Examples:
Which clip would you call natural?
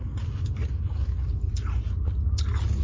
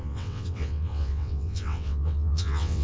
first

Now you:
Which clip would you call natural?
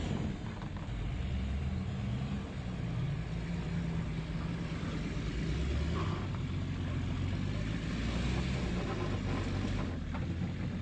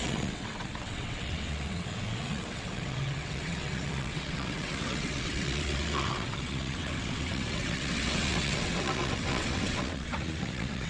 first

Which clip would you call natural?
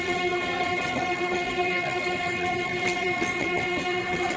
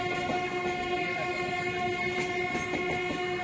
second